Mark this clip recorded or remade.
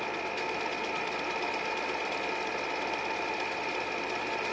recorded